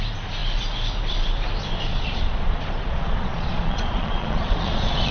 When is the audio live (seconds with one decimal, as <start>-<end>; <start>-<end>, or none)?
0.0-1.9